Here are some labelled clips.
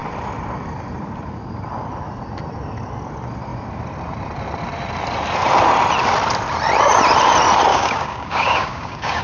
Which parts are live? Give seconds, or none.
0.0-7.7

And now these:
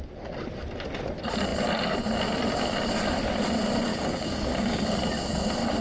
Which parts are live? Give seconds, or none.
0.0-3.9; 4.9-5.8

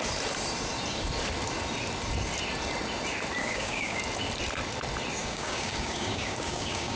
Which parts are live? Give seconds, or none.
0.0-3.4; 4.0-5.2

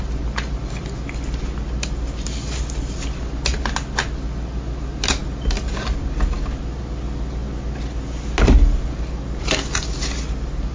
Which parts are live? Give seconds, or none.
0.0-10.7

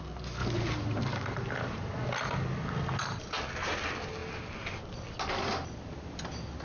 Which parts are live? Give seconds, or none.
0.0-6.6

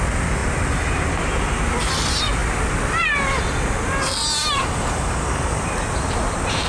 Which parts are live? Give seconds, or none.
0.0-4.6; 5.6-6.7

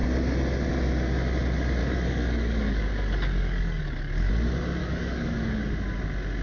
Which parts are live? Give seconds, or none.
0.0-1.8; 4.3-4.8; 5.6-6.4

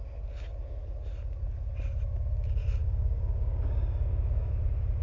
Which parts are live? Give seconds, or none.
0.0-2.8; 4.5-5.0